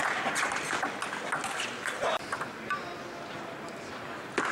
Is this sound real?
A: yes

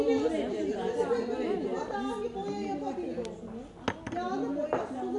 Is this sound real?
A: yes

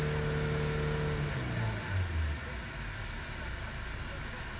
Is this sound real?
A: yes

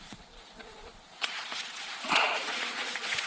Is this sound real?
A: no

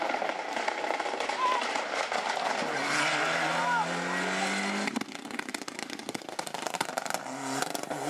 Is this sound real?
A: yes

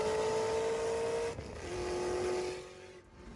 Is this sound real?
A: yes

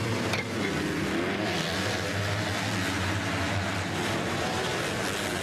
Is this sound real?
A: yes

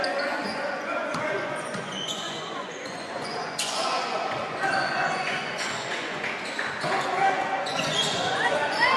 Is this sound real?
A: no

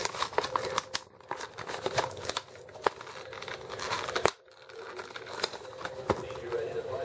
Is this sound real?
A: yes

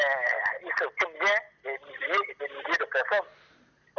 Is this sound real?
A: yes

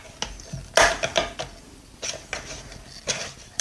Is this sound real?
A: yes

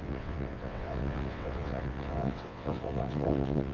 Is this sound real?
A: no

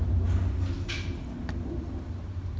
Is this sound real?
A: yes